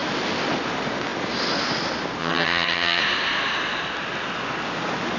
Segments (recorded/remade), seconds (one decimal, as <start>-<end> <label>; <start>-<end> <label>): 0.0-2.2 recorded; 2.2-3.0 remade; 3.0-5.2 recorded

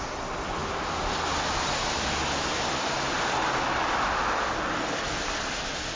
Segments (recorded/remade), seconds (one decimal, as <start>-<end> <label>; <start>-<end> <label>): 0.0-6.0 recorded

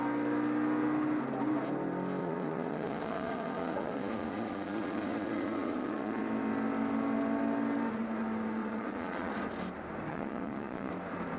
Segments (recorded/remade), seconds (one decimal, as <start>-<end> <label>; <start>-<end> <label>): 0.0-2.2 recorded; 2.2-6.2 remade; 6.2-8.6 recorded; 8.6-9.3 remade; 9.3-10.1 recorded; 10.1-10.9 remade; 10.9-11.4 recorded